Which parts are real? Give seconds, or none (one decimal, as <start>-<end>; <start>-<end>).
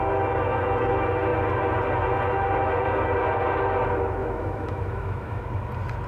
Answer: 0.0-4.2; 5.4-6.1